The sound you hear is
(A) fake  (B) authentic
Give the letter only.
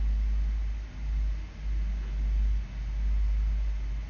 B